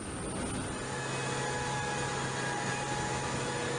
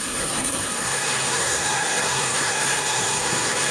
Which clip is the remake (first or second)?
second